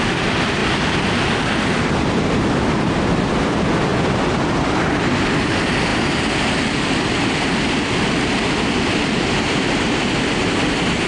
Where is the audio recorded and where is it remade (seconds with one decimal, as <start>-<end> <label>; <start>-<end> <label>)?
0.0-0.6 recorded; 0.6-1.9 remade; 1.9-3.9 recorded; 3.9-5.3 remade; 5.3-5.9 recorded; 5.9-11.1 remade